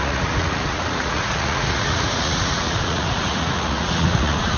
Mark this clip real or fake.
fake